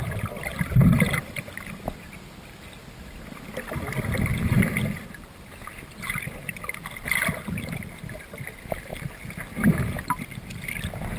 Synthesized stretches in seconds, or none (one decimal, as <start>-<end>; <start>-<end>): none